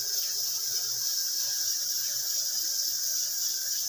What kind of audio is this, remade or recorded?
recorded